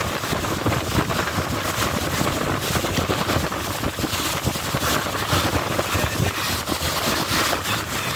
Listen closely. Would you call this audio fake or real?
real